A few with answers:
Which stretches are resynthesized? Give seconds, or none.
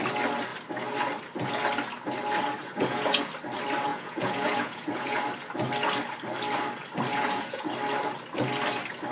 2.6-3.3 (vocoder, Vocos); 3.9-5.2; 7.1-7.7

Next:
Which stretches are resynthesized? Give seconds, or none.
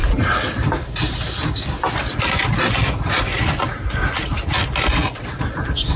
none